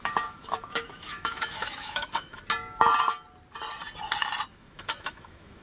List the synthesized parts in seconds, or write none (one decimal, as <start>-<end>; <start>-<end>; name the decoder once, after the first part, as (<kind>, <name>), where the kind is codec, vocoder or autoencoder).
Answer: 0.0-2.4 (autoencoder, DAC-VAE); 4.5-5.6